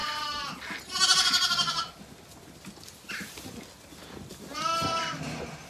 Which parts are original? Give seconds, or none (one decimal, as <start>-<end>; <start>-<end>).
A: 0.0-5.7